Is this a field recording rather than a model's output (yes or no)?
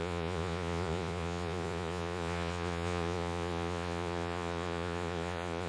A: no